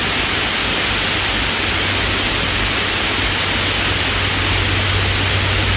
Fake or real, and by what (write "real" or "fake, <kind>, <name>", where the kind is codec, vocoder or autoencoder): real